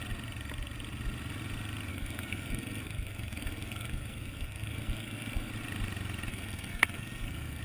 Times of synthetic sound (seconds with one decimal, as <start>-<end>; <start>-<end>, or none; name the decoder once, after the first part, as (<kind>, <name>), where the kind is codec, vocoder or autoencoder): 1.9-5.5 (codec, SNAC); 6.3-7.6